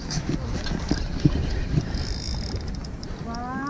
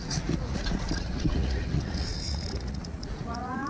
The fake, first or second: second